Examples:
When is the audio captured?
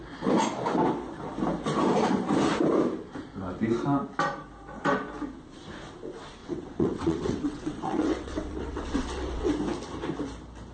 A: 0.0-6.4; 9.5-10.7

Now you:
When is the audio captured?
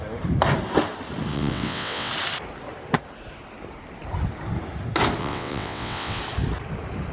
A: 0.0-1.3; 2.1-5.2; 6.2-7.1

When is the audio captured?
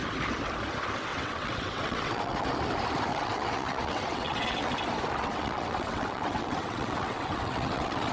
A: 0.0-1.1; 2.5-3.1; 4.7-5.2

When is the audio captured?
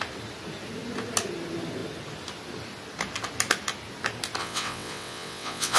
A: 0.0-4.4